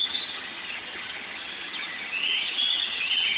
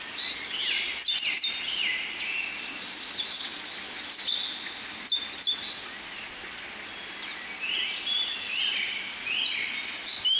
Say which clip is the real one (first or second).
second